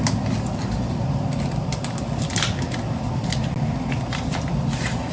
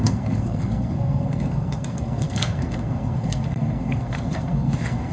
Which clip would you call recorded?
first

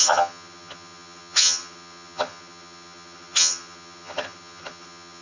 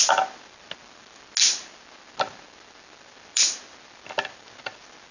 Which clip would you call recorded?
second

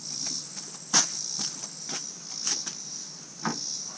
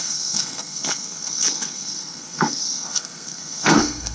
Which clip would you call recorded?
first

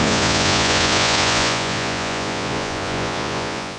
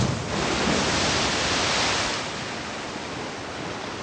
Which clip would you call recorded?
second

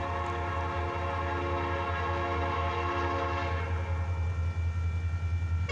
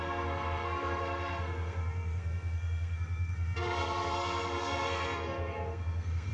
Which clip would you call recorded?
first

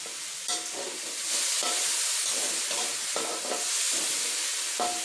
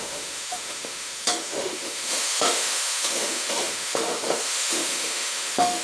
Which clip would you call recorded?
first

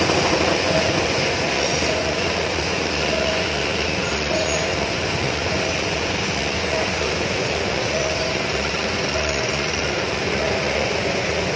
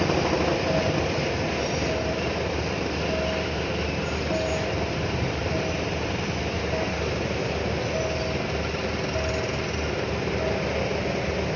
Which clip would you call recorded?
second